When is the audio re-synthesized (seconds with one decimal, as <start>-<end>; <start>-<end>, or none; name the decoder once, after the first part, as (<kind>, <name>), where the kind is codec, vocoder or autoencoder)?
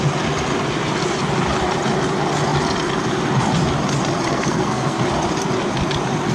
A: 4.3-5.0 (codec, SNAC)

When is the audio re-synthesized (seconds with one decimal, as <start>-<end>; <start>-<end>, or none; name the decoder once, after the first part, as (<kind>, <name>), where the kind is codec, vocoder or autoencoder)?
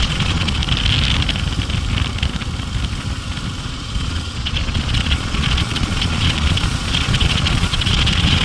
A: 0.0-0.6 (vocoder, Vocos); 3.6-8.4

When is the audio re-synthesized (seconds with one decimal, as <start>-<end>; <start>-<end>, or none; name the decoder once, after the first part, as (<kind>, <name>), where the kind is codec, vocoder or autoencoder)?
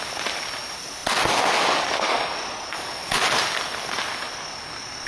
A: none